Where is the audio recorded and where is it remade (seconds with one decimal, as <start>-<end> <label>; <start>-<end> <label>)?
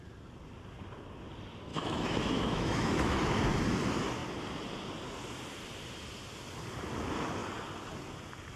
0.0-1.7 recorded; 1.7-3.4 remade; 3.4-8.6 recorded